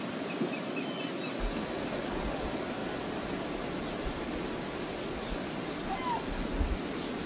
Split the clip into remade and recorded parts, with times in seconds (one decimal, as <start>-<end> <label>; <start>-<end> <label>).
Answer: 0.0-7.3 recorded